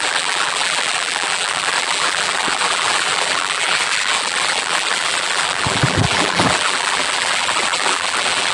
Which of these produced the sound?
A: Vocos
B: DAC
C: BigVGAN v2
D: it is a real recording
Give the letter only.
C